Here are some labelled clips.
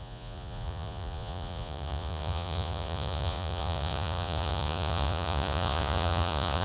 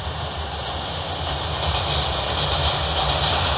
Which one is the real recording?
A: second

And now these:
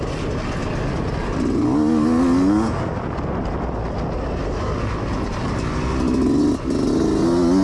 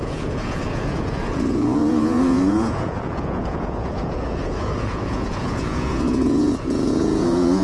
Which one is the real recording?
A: first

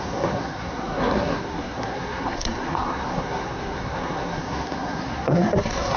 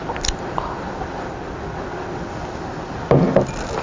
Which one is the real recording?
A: second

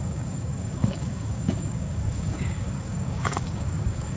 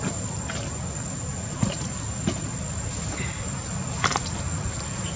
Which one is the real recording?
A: second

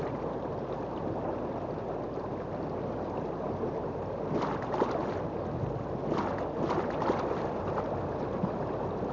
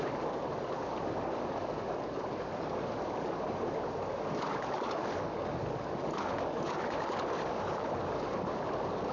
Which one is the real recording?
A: first